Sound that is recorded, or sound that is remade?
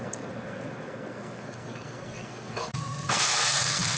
remade